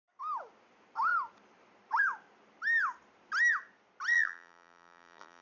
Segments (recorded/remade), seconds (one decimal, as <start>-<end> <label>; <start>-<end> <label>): 0.0-4.1 recorded; 4.1-5.4 remade